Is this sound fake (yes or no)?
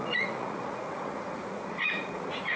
yes